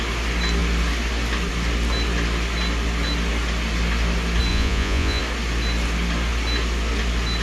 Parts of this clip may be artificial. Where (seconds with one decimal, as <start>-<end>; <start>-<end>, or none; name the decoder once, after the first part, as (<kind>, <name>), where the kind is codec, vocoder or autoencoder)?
4.5-5.2 (vocoder, Vocos)